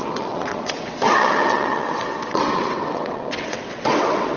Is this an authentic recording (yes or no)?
no